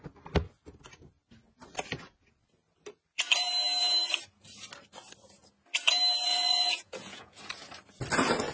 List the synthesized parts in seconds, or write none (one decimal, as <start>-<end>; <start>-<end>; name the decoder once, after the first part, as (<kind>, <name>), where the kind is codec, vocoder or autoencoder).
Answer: 6.3-7.4 (vocoder, Vocos)

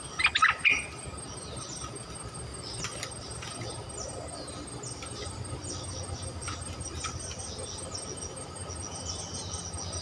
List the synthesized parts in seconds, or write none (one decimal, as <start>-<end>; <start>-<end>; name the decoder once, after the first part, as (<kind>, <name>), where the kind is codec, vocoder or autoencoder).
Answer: none

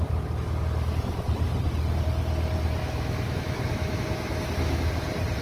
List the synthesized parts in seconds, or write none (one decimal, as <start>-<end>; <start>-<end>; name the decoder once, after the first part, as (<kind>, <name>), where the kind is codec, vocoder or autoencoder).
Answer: 2.8-4.9 (autoencoder, DAC-VAE)

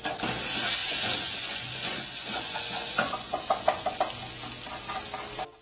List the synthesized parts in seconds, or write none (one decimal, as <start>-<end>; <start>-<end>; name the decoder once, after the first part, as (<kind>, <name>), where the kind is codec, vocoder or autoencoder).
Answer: 0.8-4.0 (vocoder, Vocos)